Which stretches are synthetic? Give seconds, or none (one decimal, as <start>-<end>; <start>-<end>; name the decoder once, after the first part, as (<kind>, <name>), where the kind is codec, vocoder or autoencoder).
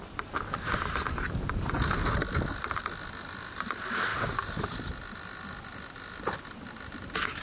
none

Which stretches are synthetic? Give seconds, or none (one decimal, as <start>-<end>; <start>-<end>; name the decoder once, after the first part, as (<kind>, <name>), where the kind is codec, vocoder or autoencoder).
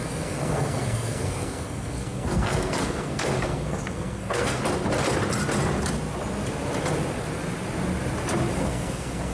0.0-4.6 (codec, SNAC); 8.6-9.3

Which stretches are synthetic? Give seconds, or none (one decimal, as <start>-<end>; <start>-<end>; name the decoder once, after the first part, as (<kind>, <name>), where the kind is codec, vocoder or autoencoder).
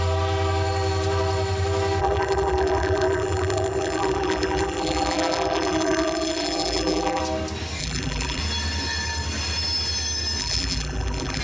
2.0-7.2 (vocoder, BigVGAN v2); 7.8-8.4; 10.4-11.4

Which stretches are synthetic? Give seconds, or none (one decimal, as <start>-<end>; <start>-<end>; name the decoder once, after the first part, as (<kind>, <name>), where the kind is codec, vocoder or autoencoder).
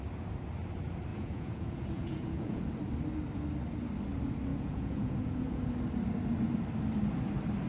1.1-2.6 (vocoder, Vocos); 4.5-5.6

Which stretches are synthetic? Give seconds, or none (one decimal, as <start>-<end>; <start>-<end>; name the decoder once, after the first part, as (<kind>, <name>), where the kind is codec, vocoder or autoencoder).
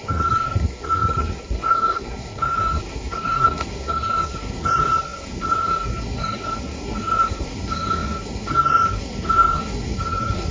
0.0-10.5 (codec, SNAC)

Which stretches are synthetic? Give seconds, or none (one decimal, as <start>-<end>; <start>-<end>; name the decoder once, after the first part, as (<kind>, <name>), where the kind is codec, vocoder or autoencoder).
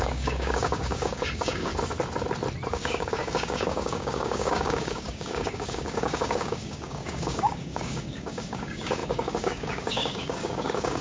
0.0-1.7 (codec, DAC); 2.7-11.0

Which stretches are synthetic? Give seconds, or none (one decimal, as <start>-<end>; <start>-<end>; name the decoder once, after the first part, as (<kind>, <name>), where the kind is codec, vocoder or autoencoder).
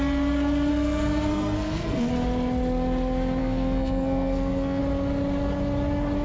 0.7-2.1 (codec, SNAC); 3.4-4.8